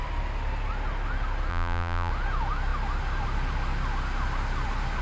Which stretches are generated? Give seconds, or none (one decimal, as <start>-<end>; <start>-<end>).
1.5-2.1